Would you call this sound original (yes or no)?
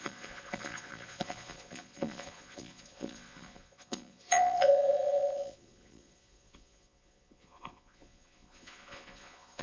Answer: no